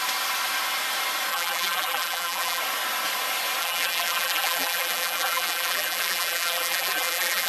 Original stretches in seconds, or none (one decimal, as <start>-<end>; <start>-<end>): 0.0-1.3; 2.6-3.6